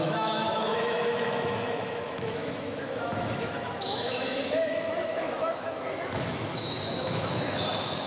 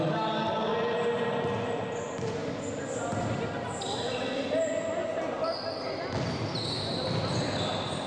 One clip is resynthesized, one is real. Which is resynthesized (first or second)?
first